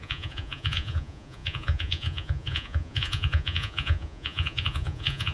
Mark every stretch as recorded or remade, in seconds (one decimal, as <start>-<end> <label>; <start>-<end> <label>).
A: 0.0-5.3 remade